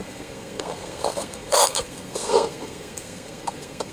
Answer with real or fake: fake